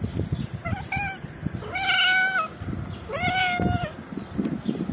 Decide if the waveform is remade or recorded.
recorded